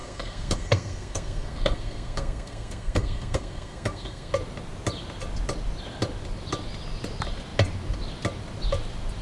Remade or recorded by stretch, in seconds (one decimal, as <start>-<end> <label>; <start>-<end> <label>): 0.0-4.3 remade; 4.3-9.2 recorded